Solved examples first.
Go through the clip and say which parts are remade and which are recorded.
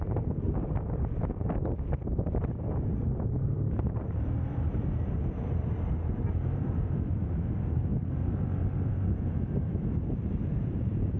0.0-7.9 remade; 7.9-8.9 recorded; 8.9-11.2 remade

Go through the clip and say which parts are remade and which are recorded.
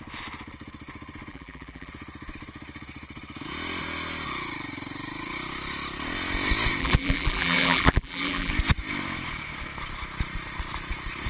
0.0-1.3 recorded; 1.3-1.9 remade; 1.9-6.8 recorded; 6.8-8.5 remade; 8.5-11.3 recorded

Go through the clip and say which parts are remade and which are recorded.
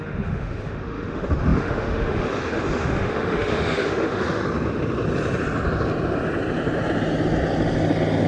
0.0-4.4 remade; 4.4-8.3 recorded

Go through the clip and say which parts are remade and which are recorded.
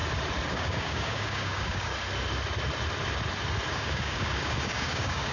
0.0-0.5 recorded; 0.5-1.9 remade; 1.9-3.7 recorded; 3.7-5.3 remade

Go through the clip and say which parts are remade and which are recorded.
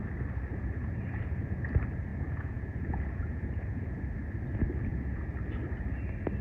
0.0-0.5 recorded; 0.5-1.7 remade; 1.7-2.1 recorded; 2.1-4.0 remade; 4.0-4.9 recorded; 4.9-5.4 remade; 5.4-6.4 recorded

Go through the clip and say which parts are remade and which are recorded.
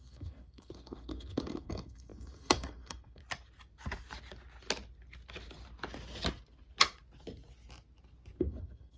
0.0-3.2 remade; 3.2-8.4 recorded; 8.4-9.0 remade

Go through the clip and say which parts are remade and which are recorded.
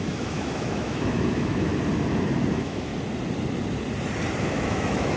0.0-1.7 remade; 1.7-2.5 recorded; 2.5-2.9 remade; 2.9-4.4 recorded; 4.4-5.2 remade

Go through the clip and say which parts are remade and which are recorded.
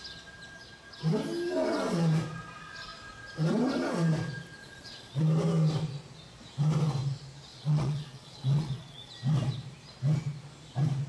0.0-4.6 recorded; 4.6-5.2 remade; 5.2-7.5 recorded; 7.5-9.1 remade; 9.1-11.1 recorded